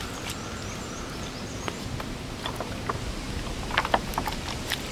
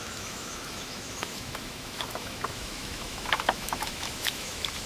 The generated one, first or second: second